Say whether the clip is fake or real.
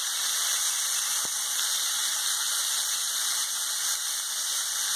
real